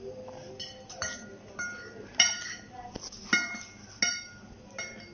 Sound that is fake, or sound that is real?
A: real